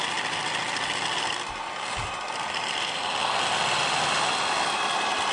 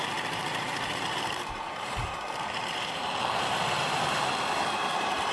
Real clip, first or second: first